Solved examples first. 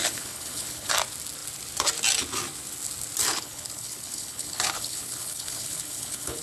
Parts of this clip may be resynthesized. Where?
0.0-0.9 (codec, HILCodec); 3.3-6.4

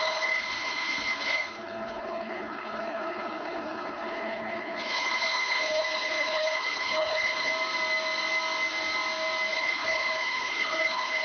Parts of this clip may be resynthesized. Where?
0.0-7.5 (codec, HILCodec); 9.5-11.2

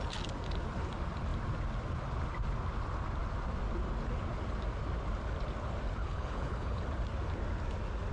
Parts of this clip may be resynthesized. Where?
6.0-6.8 (codec, HILCodec)

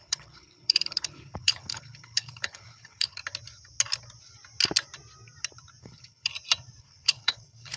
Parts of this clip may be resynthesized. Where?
0.0-3.2 (codec, HILCodec); 5.8-6.3; 6.8-7.8

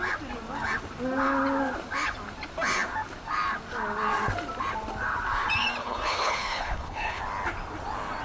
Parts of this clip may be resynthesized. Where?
5.8-7.2 (codec, HILCodec)

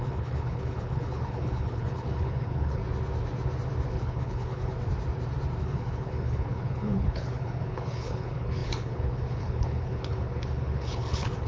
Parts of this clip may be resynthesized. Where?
0.0-2.8 (codec, HILCodec); 3.9-4.7; 5.6-11.5

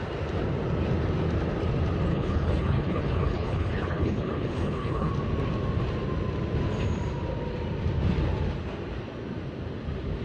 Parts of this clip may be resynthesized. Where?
2.1-5.1 (codec, HILCodec)

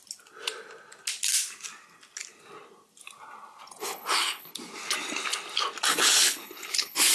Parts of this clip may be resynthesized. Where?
3.8-4.5 (codec, HILCodec); 5.9-7.1